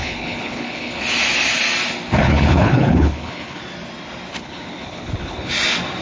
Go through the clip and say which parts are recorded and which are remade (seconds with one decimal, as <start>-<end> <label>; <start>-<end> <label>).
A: 0.0-1.0 remade; 1.0-2.2 recorded; 2.2-3.6 remade; 3.6-4.3 recorded; 4.3-5.5 remade; 5.5-6.0 recorded